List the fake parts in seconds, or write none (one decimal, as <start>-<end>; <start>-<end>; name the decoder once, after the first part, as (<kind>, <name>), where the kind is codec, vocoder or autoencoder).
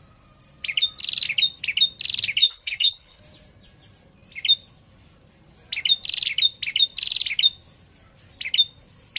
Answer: 2.4-3.2 (codec, HILCodec)